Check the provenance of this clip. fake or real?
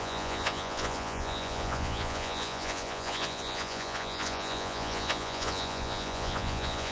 fake